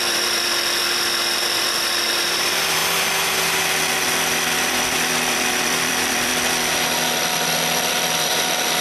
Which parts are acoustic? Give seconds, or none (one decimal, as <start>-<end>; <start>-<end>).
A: 2.8-4.0; 6.3-7.9